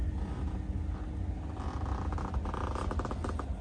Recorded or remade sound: recorded